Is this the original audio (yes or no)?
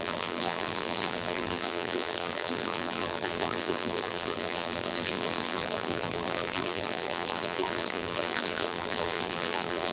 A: no